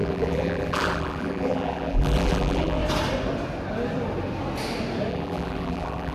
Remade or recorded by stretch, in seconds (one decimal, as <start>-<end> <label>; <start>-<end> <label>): 0.0-2.8 remade; 2.8-5.1 recorded; 5.1-6.1 remade

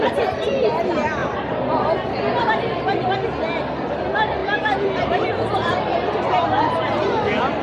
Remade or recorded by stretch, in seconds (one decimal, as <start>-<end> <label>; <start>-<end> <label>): 0.0-4.4 recorded; 4.4-7.6 remade

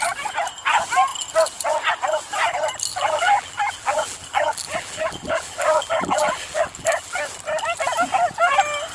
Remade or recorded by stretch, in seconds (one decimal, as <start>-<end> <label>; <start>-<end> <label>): 0.0-2.9 recorded; 2.9-7.2 remade; 7.2-8.9 recorded

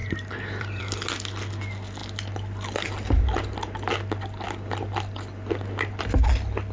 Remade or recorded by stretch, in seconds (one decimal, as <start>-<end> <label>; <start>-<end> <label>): 0.0-0.8 remade; 0.8-6.7 recorded

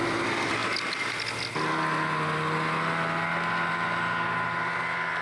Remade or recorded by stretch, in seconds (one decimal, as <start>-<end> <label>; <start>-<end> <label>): 0.0-5.2 recorded

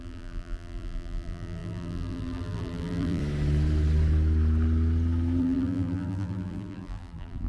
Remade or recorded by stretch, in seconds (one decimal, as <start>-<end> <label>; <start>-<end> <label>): 0.0-3.2 remade; 3.2-5.4 recorded; 5.4-7.5 remade

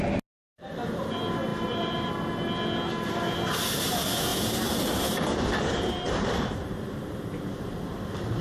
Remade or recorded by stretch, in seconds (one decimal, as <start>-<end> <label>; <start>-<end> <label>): 0.0-1.5 recorded; 1.5-2.1 remade; 2.1-4.3 recorded; 4.3-7.6 remade; 7.6-8.4 recorded